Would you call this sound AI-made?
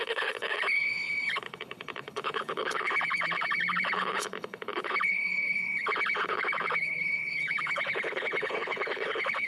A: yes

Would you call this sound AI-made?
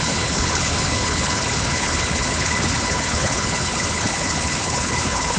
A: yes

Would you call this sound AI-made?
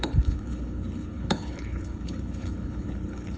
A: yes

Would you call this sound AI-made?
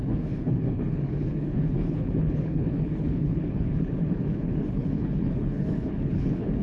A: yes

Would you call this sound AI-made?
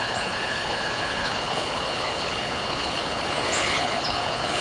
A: yes